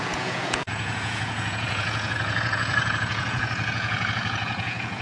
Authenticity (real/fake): fake